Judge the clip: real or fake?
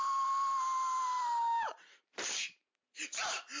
fake